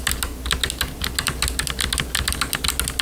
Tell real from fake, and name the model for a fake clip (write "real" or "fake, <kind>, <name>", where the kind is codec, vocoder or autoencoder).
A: real